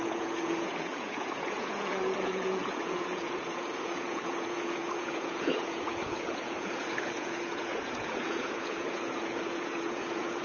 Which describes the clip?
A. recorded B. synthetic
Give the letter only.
B